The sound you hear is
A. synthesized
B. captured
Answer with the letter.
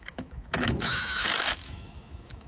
A